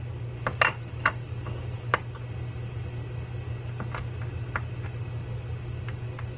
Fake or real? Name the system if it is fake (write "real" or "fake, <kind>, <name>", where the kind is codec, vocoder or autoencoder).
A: real